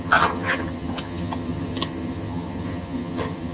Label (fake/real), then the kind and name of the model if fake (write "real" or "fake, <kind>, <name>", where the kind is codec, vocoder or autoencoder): fake, vocoder, HiFi-GAN